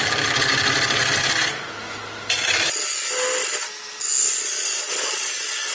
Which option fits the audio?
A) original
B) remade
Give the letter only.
A